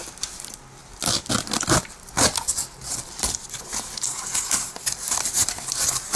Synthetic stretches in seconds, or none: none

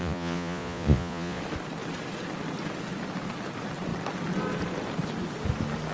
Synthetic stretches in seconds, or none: 0.0-1.4

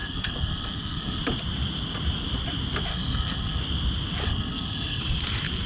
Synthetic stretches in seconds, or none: 0.0-1.2; 2.9-3.6; 4.2-5.0

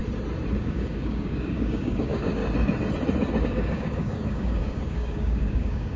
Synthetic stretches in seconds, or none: 0.6-2.4; 3.4-6.0

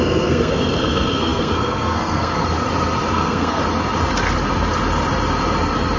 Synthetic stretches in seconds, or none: 0.0-2.4; 3.1-3.6

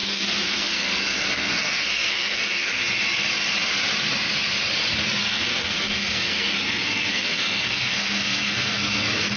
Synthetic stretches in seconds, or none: 0.0-2.8; 5.2-9.4

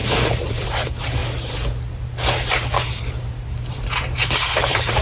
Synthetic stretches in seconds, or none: 0.5-1.2; 3.7-5.0